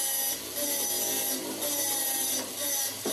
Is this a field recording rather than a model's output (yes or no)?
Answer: yes